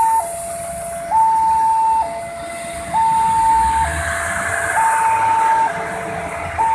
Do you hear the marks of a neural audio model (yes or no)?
no